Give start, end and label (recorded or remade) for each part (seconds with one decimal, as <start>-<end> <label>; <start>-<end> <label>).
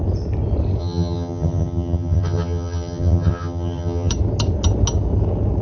0.0-0.8 recorded; 0.8-4.1 remade; 4.1-5.6 recorded